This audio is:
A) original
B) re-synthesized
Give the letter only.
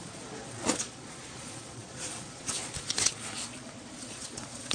B